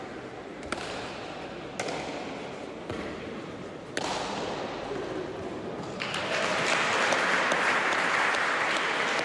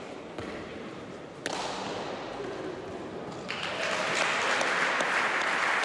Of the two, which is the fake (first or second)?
first